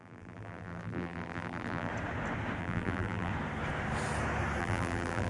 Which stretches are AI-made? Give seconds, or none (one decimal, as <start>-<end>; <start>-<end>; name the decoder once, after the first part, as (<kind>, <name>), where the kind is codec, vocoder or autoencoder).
0.0-1.9 (vocoder, BigVGAN v2); 2.6-3.3; 4.6-5.3